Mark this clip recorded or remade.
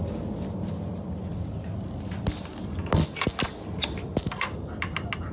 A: recorded